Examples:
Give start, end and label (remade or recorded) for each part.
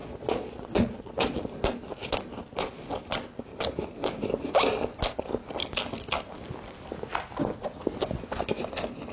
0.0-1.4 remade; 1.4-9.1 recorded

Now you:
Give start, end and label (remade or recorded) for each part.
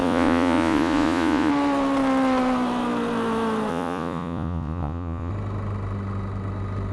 0.0-1.5 remade; 1.5-3.7 recorded; 3.7-5.3 remade; 5.3-6.9 recorded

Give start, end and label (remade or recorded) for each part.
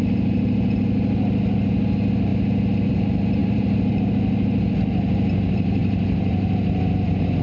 0.0-3.4 recorded; 3.4-4.1 remade; 4.1-7.4 recorded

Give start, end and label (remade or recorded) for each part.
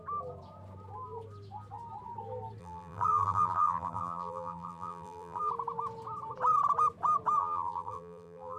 0.0-2.6 recorded; 2.6-5.5 remade; 5.5-7.4 recorded; 7.4-8.6 remade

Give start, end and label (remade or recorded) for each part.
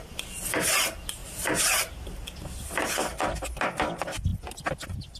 0.0-5.2 recorded